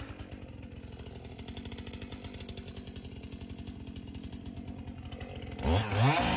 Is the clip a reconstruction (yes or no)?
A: no